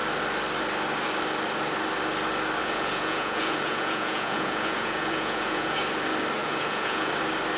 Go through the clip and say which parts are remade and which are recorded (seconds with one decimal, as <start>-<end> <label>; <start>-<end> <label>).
0.0-2.6 recorded; 2.6-5.8 remade; 5.8-6.4 recorded; 6.4-7.1 remade; 7.1-7.6 recorded